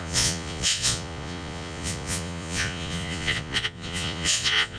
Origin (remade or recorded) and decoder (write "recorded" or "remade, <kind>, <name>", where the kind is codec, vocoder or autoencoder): remade, vocoder, Vocos